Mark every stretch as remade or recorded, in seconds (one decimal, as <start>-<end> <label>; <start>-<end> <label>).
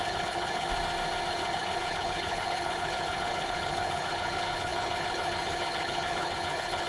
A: 0.0-0.7 remade; 0.7-1.3 recorded; 1.3-6.9 remade